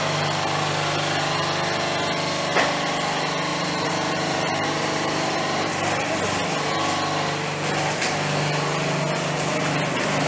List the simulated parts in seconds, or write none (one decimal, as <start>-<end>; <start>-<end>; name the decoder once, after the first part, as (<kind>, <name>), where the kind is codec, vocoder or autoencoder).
3.5-5.7 (vocoder, BigVGAN v2)